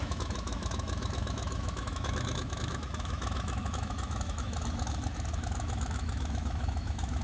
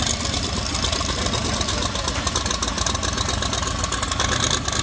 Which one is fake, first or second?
first